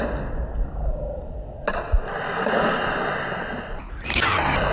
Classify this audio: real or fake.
real